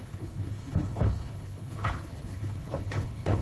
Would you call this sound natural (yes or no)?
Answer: no